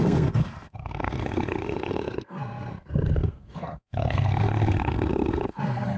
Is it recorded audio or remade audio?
remade